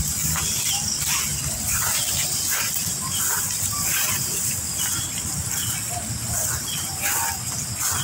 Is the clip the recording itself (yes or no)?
yes